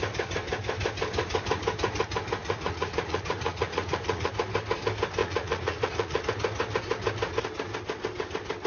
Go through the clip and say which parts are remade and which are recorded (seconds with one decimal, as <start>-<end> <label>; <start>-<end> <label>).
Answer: 0.0-2.4 recorded; 2.4-4.3 remade; 4.3-5.2 recorded; 5.2-6.2 remade; 6.2-8.7 recorded